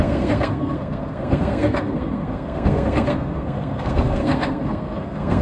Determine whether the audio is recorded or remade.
remade